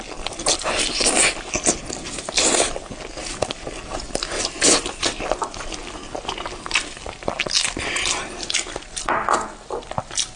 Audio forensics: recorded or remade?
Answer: recorded